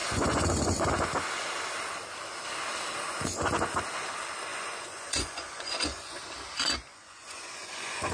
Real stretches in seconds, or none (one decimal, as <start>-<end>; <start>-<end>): 0.8-4.5; 6.2-6.9